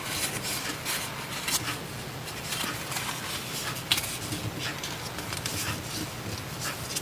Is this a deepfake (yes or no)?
no